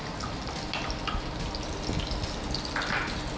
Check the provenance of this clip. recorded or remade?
recorded